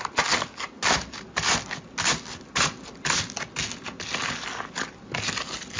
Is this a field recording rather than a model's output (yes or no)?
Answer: yes